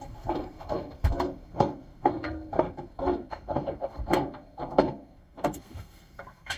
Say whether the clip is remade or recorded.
remade